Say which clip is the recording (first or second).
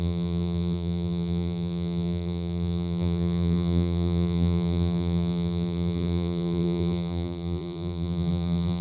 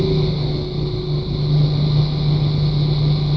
second